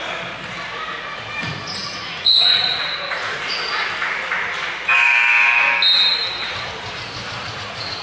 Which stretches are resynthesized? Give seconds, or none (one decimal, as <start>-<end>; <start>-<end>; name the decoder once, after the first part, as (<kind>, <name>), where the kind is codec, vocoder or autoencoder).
0.9-3.9 (vocoder, Vocos); 7.4-8.0